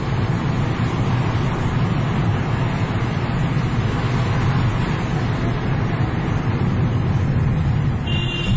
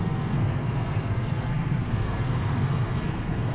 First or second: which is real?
first